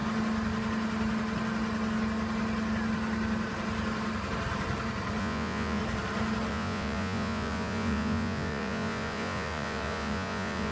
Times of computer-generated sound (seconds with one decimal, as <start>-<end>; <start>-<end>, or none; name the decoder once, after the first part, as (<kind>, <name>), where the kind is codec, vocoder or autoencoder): 5.2-5.8 (vocoder, Vocos); 6.5-10.7